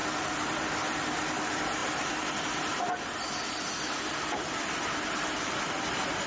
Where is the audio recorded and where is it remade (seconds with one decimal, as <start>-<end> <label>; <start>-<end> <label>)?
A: 0.0-1.3 remade; 1.3-6.3 recorded